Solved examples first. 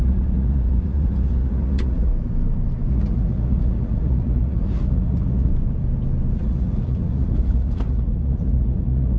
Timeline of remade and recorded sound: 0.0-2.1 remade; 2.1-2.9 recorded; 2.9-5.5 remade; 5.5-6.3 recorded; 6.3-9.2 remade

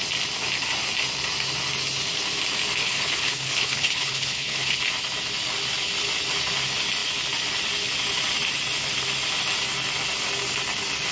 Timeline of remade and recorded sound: 0.0-2.8 recorded; 2.8-4.8 remade; 4.8-11.1 recorded

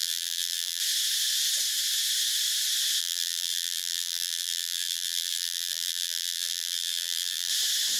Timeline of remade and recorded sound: 0.0-0.8 remade; 0.8-3.0 recorded; 3.0-7.5 remade; 7.5-8.0 recorded